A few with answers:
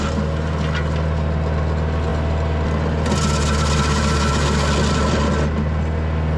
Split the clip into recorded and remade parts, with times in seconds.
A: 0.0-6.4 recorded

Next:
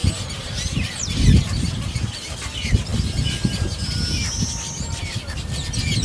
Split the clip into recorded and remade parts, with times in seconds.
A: 0.0-0.9 remade; 0.9-6.0 recorded

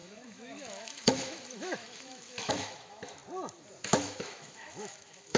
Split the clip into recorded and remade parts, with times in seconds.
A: 0.0-3.2 remade; 3.2-3.8 recorded; 3.8-5.4 remade

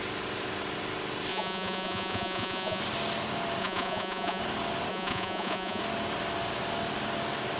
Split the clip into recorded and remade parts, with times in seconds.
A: 0.0-1.3 recorded; 1.3-2.8 remade; 2.8-3.6 recorded; 3.6-4.4 remade; 4.4-4.9 recorded; 4.9-5.8 remade; 5.8-7.6 recorded